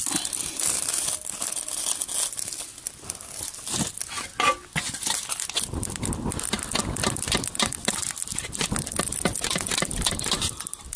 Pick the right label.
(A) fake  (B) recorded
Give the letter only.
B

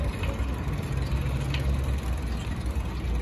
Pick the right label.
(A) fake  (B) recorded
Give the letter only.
B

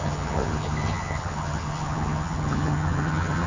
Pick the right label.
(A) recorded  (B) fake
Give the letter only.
B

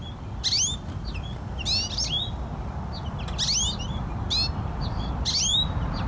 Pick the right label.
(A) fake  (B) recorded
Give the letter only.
B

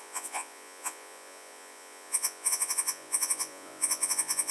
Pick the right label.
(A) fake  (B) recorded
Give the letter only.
A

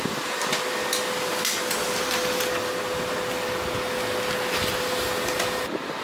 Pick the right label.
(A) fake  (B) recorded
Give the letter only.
B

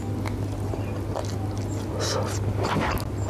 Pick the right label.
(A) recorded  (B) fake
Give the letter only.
A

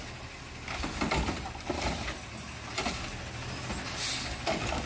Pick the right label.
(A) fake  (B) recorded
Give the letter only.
B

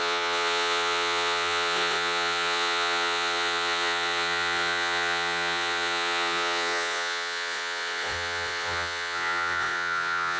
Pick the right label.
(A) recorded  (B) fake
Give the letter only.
B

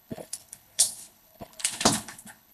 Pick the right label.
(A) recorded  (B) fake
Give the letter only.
B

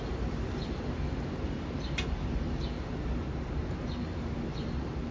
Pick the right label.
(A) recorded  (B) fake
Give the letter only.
B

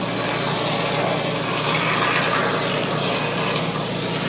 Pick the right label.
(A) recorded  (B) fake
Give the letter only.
A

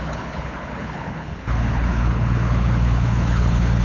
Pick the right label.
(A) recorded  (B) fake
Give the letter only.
B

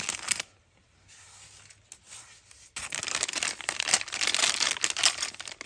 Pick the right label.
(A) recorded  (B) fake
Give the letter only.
A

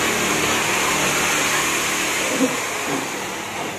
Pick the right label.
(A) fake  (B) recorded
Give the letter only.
B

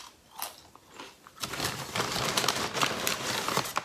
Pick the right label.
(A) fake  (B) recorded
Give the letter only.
A